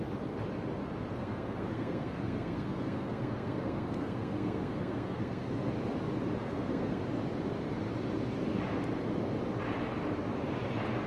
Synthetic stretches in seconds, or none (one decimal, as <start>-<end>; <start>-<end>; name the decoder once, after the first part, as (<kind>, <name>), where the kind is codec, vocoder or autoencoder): 1.1-5.7 (codec, SNAC); 6.4-7.0